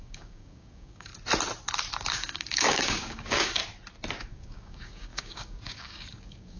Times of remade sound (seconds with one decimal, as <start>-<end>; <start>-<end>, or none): 0.0-1.1; 2.1-3.6; 4.2-6.6